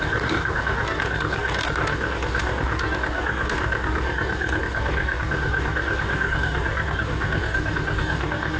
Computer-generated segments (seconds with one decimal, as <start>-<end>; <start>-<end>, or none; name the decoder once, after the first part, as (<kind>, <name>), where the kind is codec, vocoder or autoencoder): 0.0-8.6 (codec, DAC)